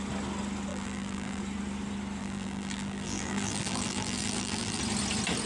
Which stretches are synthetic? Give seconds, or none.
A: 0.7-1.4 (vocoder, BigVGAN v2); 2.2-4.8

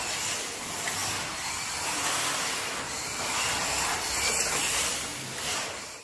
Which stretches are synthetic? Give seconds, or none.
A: none

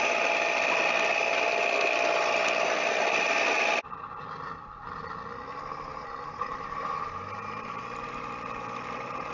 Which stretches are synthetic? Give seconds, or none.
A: 5.9-7.8 (vocoder, BigVGAN v2)

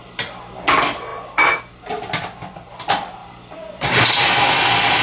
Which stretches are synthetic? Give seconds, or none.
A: 3.2-4.6 (vocoder, BigVGAN v2)

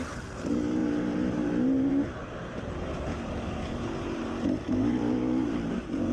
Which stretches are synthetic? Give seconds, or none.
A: 0.0-6.1 (vocoder, BigVGAN v2)

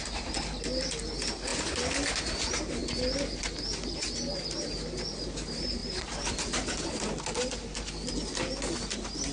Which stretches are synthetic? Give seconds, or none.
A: 1.5-2.2 (vocoder, BigVGAN v2); 5.8-6.3

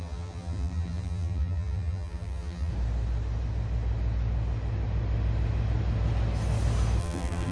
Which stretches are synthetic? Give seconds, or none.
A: 0.0-2.7 (vocoder, BigVGAN v2); 7.0-7.5

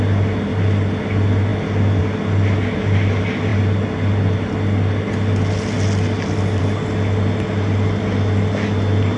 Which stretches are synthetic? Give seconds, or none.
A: none